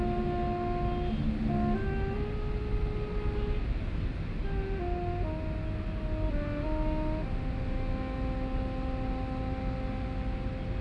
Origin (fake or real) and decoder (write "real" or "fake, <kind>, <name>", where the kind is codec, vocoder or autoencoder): real